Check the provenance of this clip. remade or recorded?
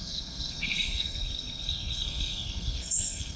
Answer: remade